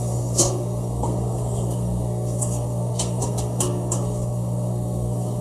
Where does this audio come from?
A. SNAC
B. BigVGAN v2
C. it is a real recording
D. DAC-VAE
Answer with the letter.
A